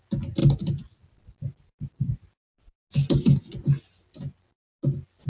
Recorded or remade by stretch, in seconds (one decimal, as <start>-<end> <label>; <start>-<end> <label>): 0.0-5.3 recorded